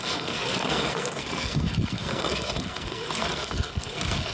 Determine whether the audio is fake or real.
fake